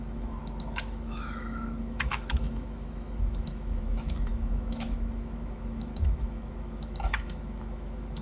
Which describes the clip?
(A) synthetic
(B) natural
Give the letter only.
A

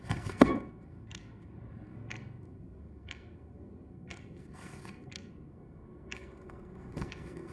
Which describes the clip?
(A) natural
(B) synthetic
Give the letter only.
B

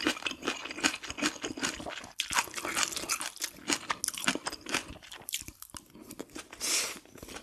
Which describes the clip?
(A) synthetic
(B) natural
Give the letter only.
B